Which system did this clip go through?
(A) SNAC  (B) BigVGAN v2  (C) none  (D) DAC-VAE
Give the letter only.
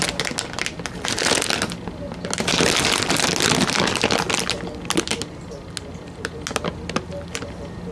C